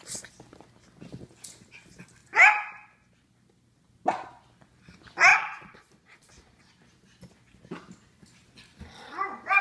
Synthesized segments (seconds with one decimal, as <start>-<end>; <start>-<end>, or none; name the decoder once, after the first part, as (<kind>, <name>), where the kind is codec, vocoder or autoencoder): 5.3-6.3 (vocoder, Vocos)